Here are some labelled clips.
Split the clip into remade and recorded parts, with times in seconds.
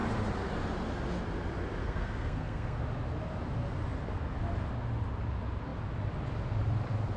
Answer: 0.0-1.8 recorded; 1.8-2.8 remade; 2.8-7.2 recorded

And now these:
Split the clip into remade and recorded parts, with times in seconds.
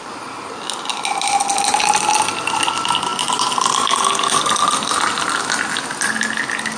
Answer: 0.0-6.8 recorded